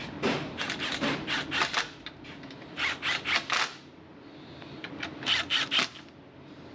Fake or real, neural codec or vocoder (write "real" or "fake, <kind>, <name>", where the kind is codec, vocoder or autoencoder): real